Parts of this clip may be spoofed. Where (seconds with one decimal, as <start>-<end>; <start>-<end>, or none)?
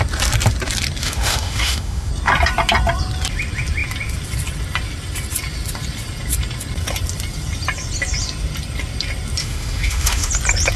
1.0-2.1; 9.4-10.3